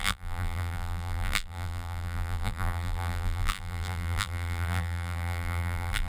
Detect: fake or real fake